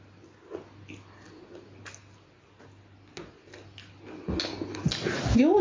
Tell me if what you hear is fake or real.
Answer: real